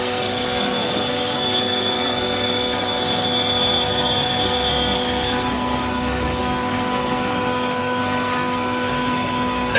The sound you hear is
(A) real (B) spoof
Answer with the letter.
B